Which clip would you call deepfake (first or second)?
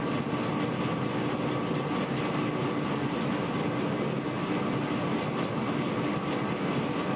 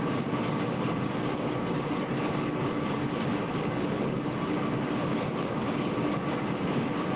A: second